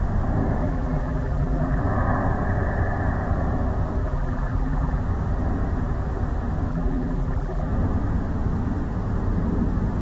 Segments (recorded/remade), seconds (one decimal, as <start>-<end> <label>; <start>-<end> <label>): 0.0-0.6 recorded; 0.6-1.8 remade; 1.8-4.0 recorded; 4.0-5.0 remade; 5.0-6.7 recorded; 6.7-7.7 remade; 7.7-10.0 recorded